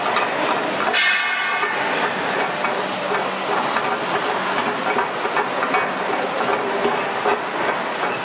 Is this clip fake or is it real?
real